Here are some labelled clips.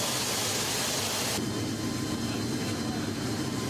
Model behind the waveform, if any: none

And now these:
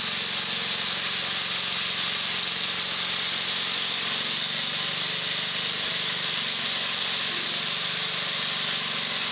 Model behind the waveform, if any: none